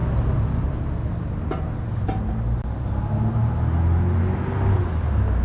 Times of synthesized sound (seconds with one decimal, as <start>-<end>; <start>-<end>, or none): none